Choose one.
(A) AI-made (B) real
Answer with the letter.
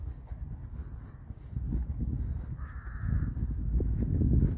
B